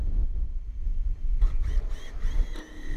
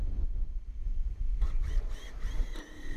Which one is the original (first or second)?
first